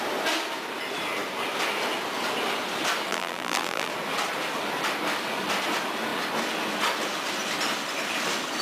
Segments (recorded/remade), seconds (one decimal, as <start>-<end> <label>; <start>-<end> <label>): 0.0-3.1 recorded; 3.1-3.9 remade; 3.9-8.6 recorded